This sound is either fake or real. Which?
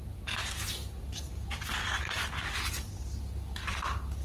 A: real